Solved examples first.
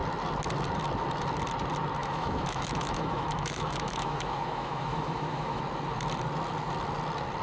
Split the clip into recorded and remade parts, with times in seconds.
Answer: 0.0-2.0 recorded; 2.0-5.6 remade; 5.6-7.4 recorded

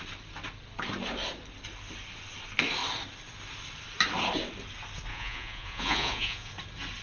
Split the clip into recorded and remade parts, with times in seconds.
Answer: 0.0-5.1 recorded; 5.1-6.5 remade; 6.5-7.0 recorded

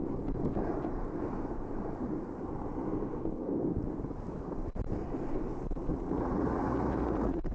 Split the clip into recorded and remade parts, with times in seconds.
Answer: 0.0-5.9 recorded; 5.9-7.5 remade